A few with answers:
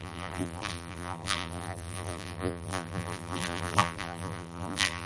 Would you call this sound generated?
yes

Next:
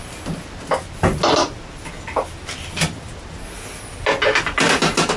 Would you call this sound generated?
no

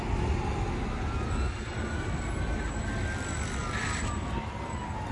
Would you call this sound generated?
no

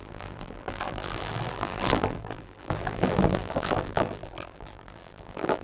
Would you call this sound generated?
yes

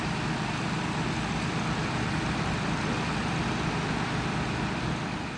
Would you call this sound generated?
no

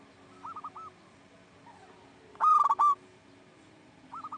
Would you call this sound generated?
no